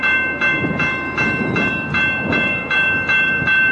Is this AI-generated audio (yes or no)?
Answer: yes